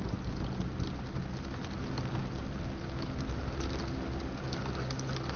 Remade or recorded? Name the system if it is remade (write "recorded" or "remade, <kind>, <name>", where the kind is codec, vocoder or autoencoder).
recorded